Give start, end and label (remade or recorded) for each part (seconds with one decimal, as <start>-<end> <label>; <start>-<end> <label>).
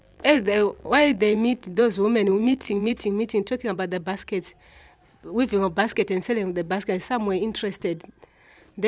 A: 0.0-1.8 remade; 1.8-2.3 recorded; 2.3-2.9 remade; 2.9-8.9 recorded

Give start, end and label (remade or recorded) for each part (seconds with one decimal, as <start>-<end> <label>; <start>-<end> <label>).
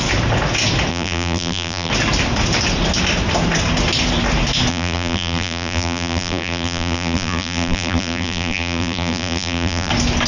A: 0.0-0.9 recorded; 0.9-1.9 remade; 1.9-4.7 recorded; 4.7-9.9 remade; 9.9-10.3 recorded